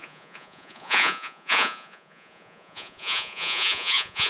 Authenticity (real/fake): fake